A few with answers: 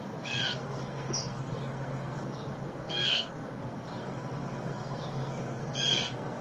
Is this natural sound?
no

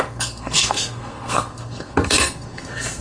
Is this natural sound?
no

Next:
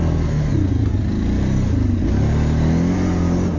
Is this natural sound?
yes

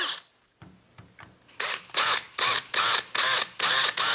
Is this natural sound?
yes